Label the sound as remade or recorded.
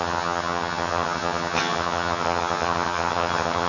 remade